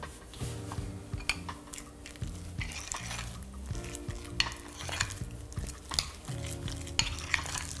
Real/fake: real